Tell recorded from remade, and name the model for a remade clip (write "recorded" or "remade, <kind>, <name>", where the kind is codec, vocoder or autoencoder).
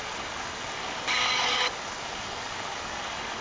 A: remade, codec, DAC